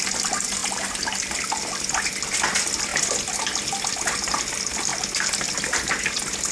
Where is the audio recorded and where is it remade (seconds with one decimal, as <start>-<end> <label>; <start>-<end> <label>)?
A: 0.0-0.6 recorded; 0.6-2.1 remade; 2.1-2.9 recorded; 2.9-3.9 remade; 3.9-4.9 recorded; 4.9-6.0 remade; 6.0-6.5 recorded